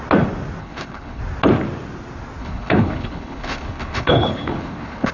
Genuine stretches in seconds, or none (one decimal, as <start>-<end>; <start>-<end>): 0.0-0.6; 1.2-2.4